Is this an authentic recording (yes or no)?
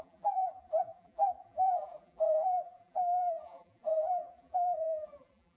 no